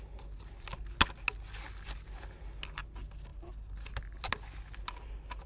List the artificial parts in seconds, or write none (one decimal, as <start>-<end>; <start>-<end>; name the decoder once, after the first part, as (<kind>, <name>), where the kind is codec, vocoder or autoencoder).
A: none